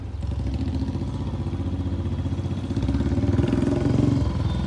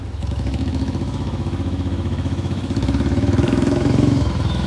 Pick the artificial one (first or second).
second